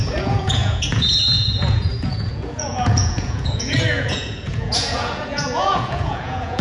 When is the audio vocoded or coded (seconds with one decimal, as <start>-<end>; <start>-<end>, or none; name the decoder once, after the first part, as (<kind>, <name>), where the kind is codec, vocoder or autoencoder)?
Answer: 0.0-6.6 (vocoder, Vocos)